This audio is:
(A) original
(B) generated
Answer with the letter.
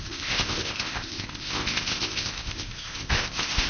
B